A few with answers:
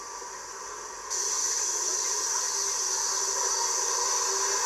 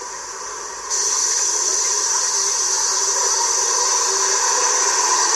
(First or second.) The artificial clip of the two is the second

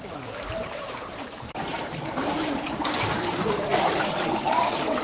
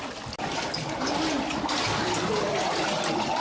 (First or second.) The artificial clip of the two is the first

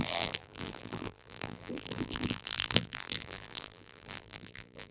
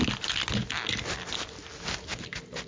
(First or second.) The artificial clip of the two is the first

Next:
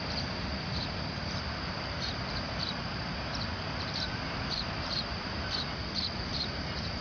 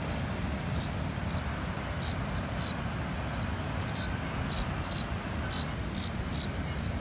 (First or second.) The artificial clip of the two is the first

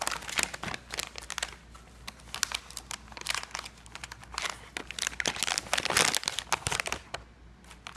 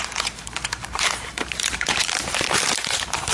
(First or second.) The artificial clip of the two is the second